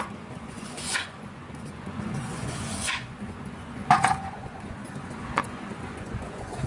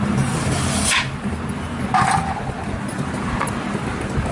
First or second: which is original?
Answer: second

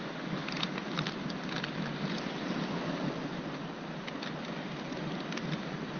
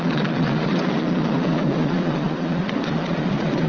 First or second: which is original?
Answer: first